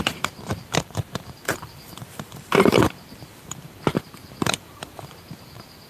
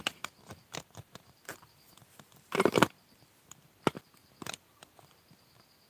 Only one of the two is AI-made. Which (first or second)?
first